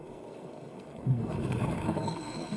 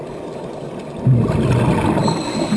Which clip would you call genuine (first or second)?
second